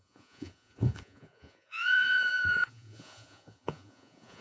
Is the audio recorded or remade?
remade